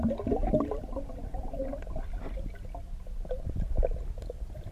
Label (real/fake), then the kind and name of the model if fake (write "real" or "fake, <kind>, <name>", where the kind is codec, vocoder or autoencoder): real